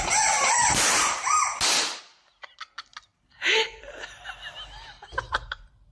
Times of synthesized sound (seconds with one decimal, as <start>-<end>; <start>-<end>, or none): 0.4-1.4; 3.1-3.8